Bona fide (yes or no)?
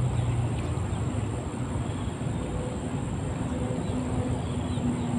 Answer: yes